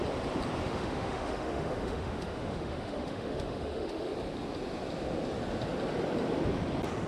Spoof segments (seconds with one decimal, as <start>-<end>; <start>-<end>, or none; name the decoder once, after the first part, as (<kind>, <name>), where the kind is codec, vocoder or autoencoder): 0.6-4.1 (autoencoder, DAC-VAE)